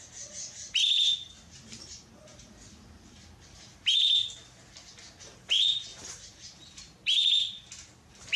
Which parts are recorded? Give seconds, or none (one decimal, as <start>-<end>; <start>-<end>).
0.0-5.9; 7.3-8.4